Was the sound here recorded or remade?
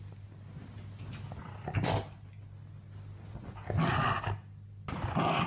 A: recorded